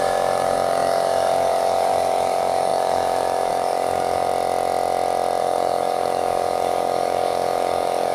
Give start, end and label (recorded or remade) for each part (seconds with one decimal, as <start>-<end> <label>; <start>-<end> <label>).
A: 0.0-4.3 remade; 4.3-5.4 recorded; 5.4-8.1 remade